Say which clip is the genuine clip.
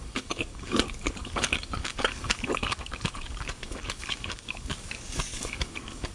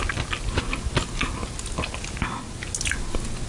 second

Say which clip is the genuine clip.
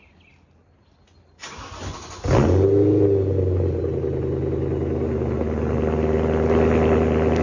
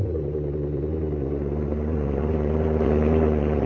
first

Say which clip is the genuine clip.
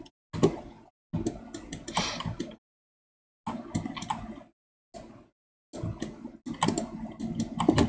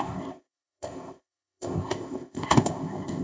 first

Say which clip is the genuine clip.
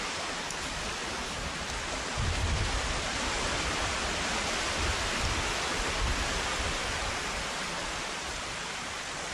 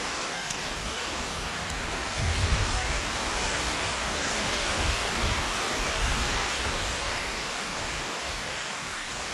first